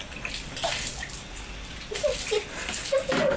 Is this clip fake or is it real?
real